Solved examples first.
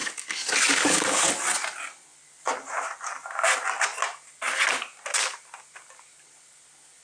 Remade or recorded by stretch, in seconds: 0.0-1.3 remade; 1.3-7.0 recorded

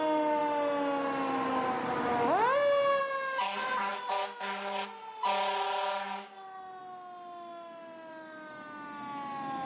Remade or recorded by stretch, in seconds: 0.0-9.7 recorded

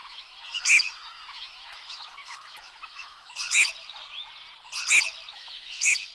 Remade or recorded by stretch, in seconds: 0.0-3.7 remade; 3.7-5.3 recorded; 5.3-6.1 remade

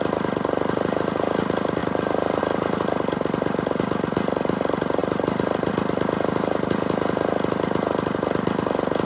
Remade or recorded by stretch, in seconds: 0.0-1.8 recorded; 1.8-2.4 remade; 2.4-5.0 recorded; 5.0-5.7 remade; 5.7-9.1 recorded

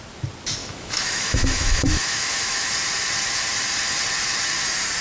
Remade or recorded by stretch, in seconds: 0.0-0.6 recorded; 0.6-2.7 remade; 2.7-5.0 recorded

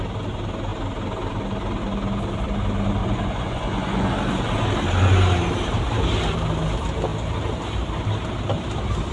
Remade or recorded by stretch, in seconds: 0.0-3.0 recorded; 3.0-4.1 remade; 4.1-9.1 recorded

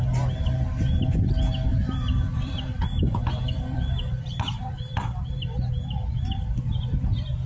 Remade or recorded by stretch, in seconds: 0.0-1.7 recorded; 1.7-6.2 remade; 6.2-7.5 recorded

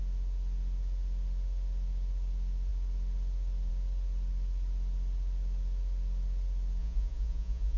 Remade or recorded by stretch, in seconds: 0.0-6.8 recorded; 6.8-7.8 remade